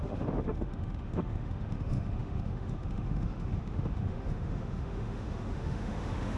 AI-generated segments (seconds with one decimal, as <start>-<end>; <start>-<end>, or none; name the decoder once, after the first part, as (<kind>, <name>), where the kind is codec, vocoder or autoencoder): 0.0-6.4 (autoencoder, DAC-VAE)